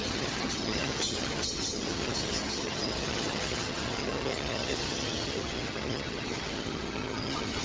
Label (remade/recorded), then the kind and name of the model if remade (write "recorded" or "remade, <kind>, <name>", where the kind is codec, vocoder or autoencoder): remade, vocoder, HiFi-GAN